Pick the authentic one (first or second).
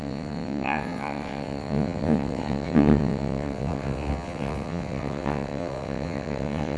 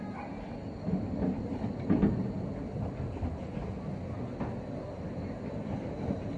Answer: second